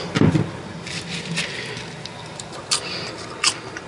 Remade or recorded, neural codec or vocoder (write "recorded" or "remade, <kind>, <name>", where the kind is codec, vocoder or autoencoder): recorded